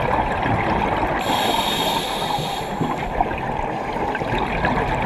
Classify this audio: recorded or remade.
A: recorded